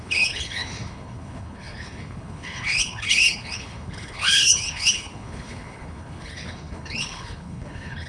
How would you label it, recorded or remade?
remade